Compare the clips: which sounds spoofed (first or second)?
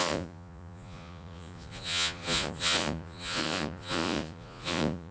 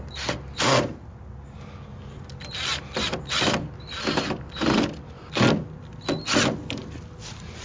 first